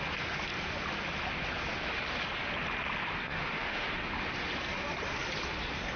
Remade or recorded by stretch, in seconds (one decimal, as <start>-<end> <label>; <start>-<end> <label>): 0.0-3.3 recorded; 3.3-3.9 remade; 3.9-6.0 recorded

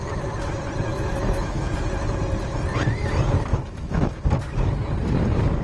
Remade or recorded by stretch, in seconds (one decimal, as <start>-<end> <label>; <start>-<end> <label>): 0.0-0.9 recorded; 0.9-1.6 remade; 1.6-3.5 recorded; 3.5-4.3 remade; 4.3-5.6 recorded

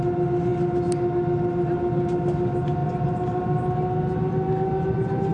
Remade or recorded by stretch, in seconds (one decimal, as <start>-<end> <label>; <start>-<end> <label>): 0.0-5.3 recorded

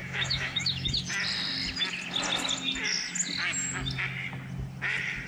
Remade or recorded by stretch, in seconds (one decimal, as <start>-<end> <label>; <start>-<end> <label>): 0.0-0.9 remade; 0.9-5.3 recorded

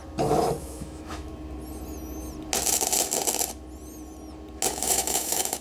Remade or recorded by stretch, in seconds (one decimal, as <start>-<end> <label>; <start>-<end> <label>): 0.0-0.6 recorded; 0.6-1.3 remade; 1.3-4.7 recorded; 4.7-5.6 remade